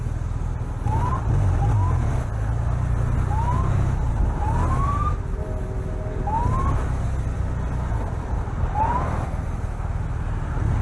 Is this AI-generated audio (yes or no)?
no